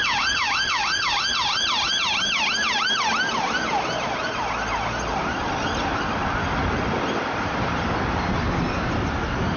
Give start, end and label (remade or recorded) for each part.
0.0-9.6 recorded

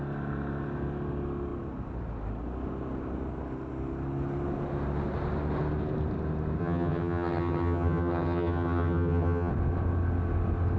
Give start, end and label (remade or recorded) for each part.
0.0-6.6 recorded; 6.6-9.5 remade; 9.5-10.8 recorded

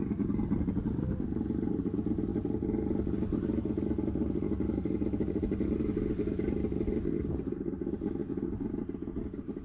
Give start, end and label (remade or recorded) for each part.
0.0-9.6 recorded

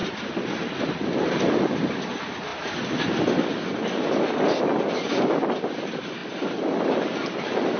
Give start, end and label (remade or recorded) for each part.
0.0-7.8 recorded

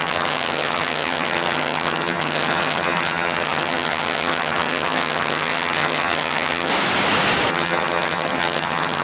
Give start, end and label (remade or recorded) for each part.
0.0-6.7 remade; 6.7-7.5 recorded; 7.5-9.0 remade

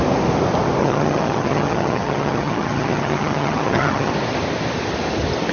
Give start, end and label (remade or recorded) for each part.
0.0-0.8 recorded; 0.8-4.1 remade; 4.1-5.5 recorded

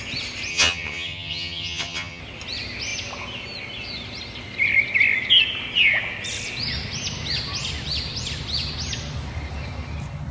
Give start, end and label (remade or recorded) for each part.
0.0-0.5 recorded; 0.5-2.2 remade; 2.2-10.3 recorded

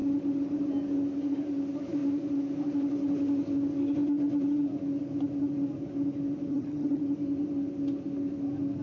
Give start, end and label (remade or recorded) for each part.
0.0-6.5 recorded; 6.5-7.0 remade; 7.0-8.8 recorded